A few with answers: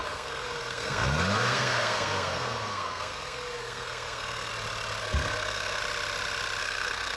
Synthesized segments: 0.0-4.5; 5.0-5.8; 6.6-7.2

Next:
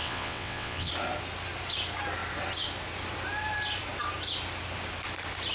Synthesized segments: 0.0-0.9